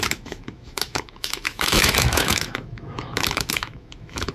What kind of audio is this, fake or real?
fake